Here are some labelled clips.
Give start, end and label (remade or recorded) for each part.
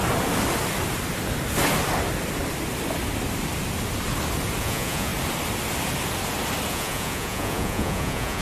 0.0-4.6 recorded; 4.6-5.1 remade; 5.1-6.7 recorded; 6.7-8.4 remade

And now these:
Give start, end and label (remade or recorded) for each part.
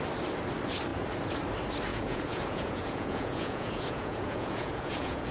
0.0-1.9 recorded; 1.9-5.3 remade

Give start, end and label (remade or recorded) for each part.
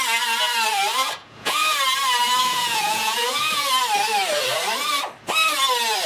0.0-1.2 recorded; 1.2-1.8 remade; 1.8-2.4 recorded; 2.4-3.7 remade; 3.7-6.1 recorded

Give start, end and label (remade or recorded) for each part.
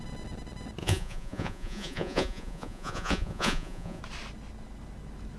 0.0-0.8 recorded; 0.8-4.0 remade; 4.0-5.4 recorded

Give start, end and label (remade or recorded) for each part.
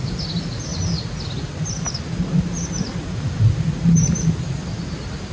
0.0-5.3 recorded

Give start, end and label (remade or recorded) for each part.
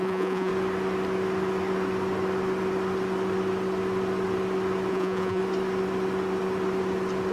0.0-0.5 remade; 0.5-4.9 recorded; 4.9-5.4 remade; 5.4-7.3 recorded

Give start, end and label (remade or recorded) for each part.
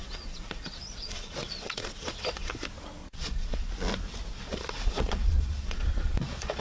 0.0-2.5 remade; 2.5-3.0 recorded; 3.0-3.7 remade; 3.7-4.3 recorded; 4.3-6.6 remade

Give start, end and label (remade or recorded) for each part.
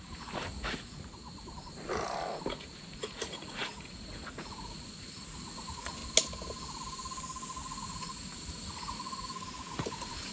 0.0-1.2 remade; 1.2-2.5 recorded; 2.5-6.0 remade; 6.0-7.6 recorded; 7.6-10.3 remade